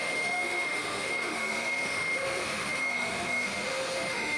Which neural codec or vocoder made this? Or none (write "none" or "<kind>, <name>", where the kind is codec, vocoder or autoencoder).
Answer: autoencoder, DAC-VAE